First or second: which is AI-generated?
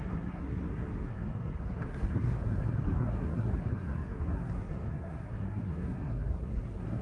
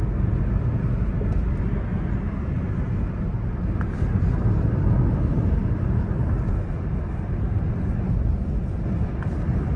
first